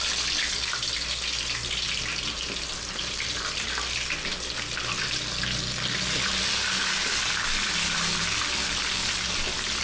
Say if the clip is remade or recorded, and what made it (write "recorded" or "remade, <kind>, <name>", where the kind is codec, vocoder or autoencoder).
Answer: recorded